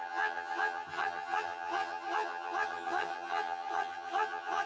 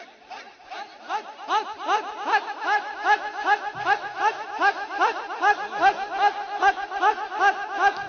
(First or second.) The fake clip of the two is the first